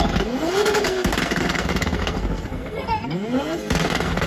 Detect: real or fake fake